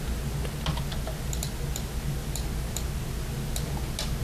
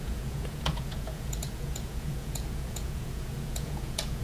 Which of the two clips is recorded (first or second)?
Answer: first